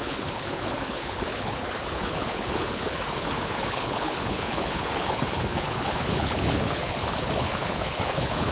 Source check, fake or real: fake